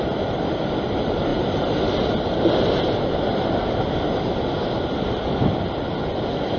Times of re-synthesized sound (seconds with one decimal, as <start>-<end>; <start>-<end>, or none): none